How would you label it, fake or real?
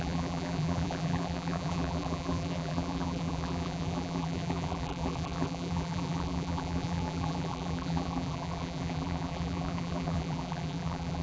fake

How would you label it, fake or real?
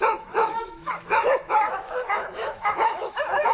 fake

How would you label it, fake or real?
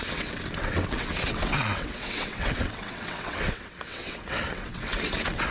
fake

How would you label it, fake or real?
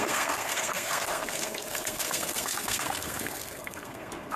fake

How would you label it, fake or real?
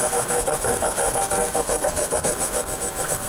fake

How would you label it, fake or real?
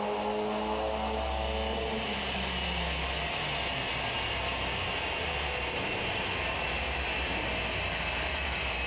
real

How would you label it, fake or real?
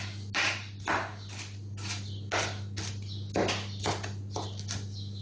real